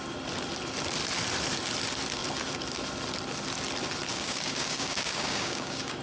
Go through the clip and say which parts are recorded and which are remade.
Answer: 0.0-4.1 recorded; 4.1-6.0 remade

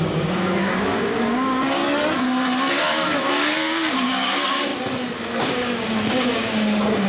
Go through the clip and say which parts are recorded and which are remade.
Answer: 0.0-1.8 remade; 1.8-2.7 recorded; 2.7-4.7 remade; 4.7-5.4 recorded; 5.4-7.1 remade

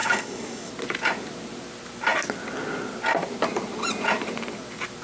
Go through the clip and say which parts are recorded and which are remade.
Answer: 0.0-0.7 remade; 0.7-5.0 recorded

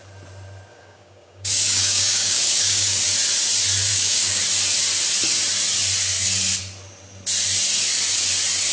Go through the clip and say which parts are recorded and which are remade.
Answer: 0.0-0.7 recorded; 0.7-3.0 remade; 3.0-3.9 recorded; 3.9-4.4 remade; 4.4-8.7 recorded

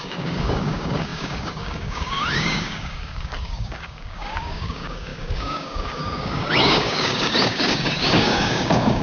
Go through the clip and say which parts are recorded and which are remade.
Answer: 0.0-9.0 remade

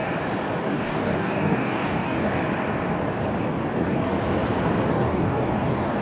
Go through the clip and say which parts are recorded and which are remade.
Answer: 0.0-0.6 recorded; 0.6-2.4 remade; 2.4-3.4 recorded; 3.4-4.1 remade; 4.1-4.9 recorded; 4.9-6.0 remade

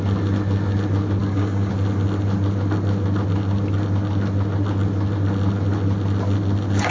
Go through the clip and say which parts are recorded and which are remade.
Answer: 0.0-1.2 recorded; 1.2-1.7 remade; 1.7-6.9 recorded